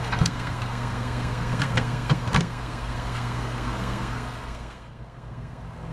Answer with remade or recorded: remade